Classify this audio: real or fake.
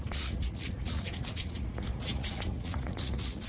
fake